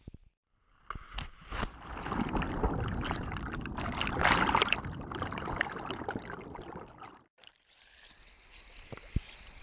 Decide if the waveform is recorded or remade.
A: recorded